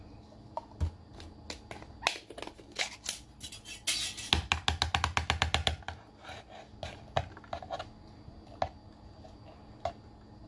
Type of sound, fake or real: real